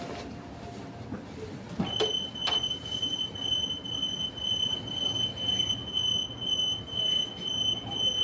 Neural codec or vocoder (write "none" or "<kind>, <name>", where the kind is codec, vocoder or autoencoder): none